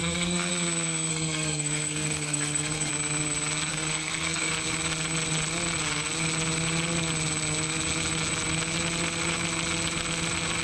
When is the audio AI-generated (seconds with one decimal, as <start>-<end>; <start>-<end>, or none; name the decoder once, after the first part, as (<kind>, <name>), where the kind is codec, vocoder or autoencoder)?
0.0-0.5 (codec, SNAC); 1.1-2.9; 3.7-4.5